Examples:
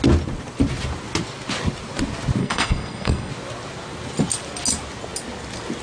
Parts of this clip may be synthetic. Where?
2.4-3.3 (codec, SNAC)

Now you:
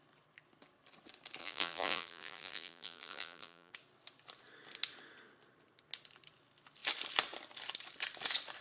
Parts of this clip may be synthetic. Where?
1.4-3.7 (vocoder, BigVGAN v2)

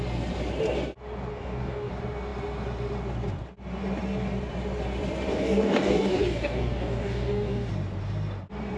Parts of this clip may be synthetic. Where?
1.3-1.9 (codec, DAC); 5.3-7.7

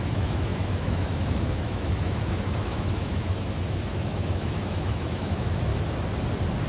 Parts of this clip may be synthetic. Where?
0.0-5.7 (autoencoder, DAC-VAE)

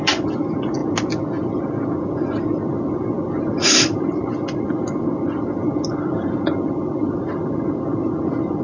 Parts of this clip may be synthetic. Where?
none

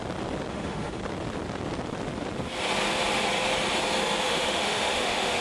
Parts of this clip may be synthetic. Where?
0.5-1.0 (autoencoder, DAC-VAE); 4.2-5.4

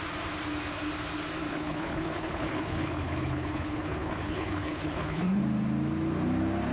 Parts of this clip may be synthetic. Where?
1.5-5.4 (codec, HILCodec)

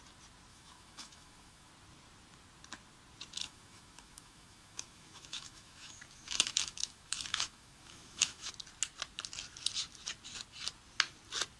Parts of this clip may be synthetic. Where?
0.5-1.7 (autoencoder, DAC-VAE); 3.4-8.5